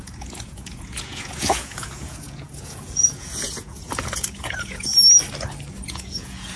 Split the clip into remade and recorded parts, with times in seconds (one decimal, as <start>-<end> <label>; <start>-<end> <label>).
0.0-4.9 remade; 4.9-5.7 recorded; 5.7-6.6 remade